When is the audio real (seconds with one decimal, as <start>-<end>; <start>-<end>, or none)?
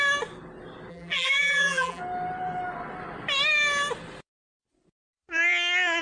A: 0.0-0.9; 2.0-6.0